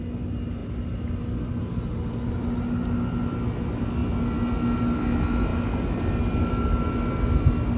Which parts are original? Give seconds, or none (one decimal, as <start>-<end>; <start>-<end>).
0.0-7.8